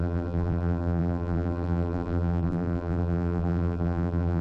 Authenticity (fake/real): fake